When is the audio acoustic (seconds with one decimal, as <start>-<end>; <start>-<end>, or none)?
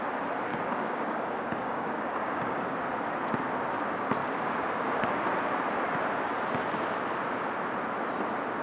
0.0-0.5; 2.8-4.2; 5.1-8.6